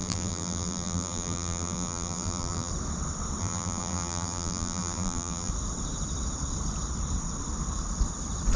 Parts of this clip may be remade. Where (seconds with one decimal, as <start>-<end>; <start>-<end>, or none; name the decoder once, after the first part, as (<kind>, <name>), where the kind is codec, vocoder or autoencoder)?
0.0-2.7 (vocoder, BigVGAN v2); 3.4-5.5